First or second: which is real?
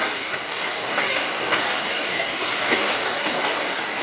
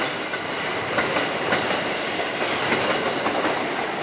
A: second